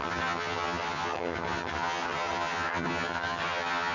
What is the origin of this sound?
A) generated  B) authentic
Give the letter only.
A